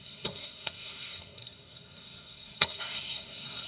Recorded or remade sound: remade